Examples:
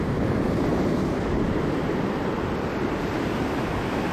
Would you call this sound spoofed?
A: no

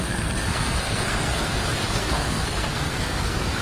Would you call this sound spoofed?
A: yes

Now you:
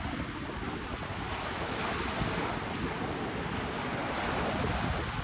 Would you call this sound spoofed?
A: no